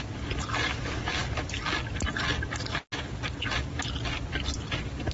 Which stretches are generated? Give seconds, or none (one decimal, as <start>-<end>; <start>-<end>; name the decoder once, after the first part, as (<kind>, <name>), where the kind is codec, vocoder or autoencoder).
none